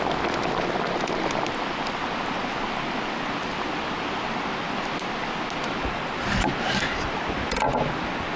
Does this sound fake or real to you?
real